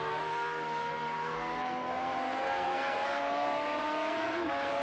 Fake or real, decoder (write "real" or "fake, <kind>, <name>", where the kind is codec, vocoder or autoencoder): fake, codec, SNAC